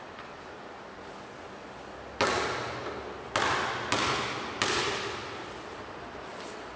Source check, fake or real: real